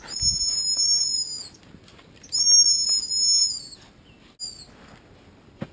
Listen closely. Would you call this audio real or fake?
real